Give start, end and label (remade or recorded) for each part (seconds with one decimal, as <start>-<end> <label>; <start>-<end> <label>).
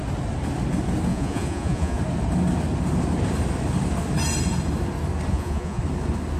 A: 0.0-1.1 recorded; 1.1-2.0 remade; 2.0-5.3 recorded; 5.3-5.8 remade; 5.8-6.4 recorded